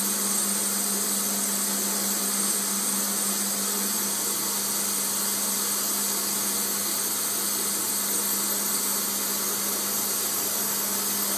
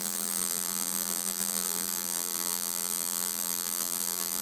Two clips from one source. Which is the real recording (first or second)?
first